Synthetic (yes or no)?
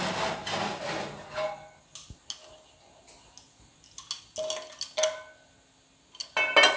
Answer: no